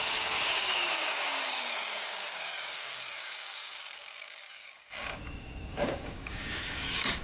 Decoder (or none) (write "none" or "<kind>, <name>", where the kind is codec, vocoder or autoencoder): codec, DAC